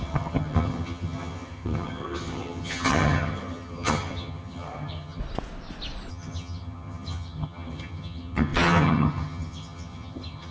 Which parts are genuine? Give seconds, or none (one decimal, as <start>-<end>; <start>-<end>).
5.2-6.1